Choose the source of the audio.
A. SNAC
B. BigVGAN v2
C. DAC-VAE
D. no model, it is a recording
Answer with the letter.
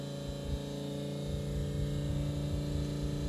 D